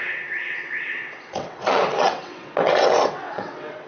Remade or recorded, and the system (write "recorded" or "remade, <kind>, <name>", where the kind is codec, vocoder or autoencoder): remade, vocoder, WaveNeXt